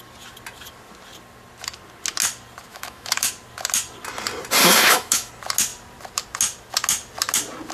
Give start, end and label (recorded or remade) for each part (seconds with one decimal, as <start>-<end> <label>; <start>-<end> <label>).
0.0-2.7 recorded; 2.7-3.3 remade; 3.3-4.6 recorded; 4.6-5.3 remade; 5.3-7.7 recorded